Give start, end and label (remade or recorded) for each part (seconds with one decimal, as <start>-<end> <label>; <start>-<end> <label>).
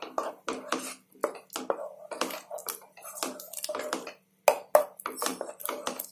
0.0-2.6 recorded; 2.6-4.0 remade; 4.0-5.3 recorded; 5.3-6.1 remade